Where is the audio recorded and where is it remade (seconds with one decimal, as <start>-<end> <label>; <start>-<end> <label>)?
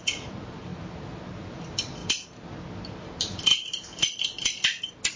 0.0-5.2 recorded